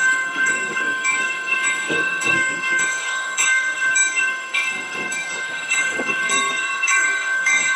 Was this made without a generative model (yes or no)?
no